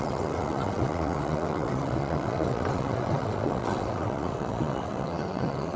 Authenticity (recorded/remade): remade